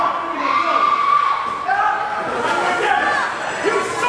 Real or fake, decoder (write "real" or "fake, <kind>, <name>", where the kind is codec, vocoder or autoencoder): real